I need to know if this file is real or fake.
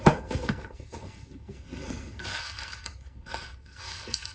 fake